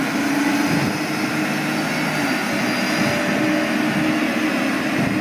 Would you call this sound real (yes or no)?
yes